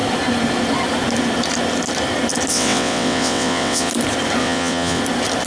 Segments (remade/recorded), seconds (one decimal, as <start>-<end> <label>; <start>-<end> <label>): 0.0-2.5 recorded; 2.5-3.9 remade; 3.9-4.4 recorded; 4.4-5.0 remade; 5.0-5.5 recorded